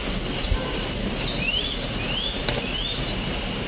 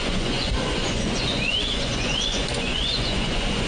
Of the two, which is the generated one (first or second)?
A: second